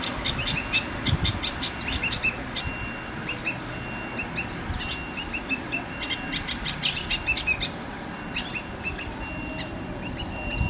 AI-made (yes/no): no